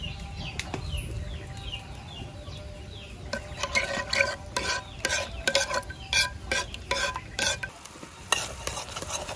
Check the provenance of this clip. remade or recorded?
recorded